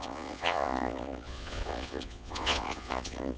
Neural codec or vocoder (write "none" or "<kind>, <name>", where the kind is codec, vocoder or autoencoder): vocoder, Vocos